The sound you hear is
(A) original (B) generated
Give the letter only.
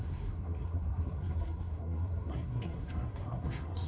B